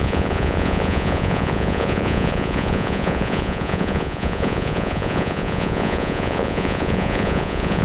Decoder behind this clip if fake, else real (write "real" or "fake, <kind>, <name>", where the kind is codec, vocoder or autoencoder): fake, vocoder, Vocos